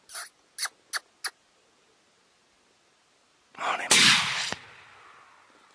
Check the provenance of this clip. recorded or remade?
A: recorded